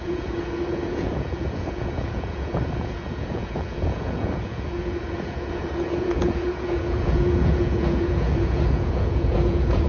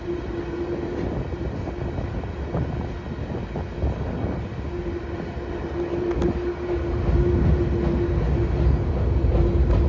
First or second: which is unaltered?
second